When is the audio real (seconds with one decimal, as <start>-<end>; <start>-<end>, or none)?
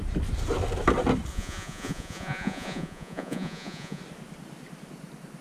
0.0-1.3; 4.0-5.4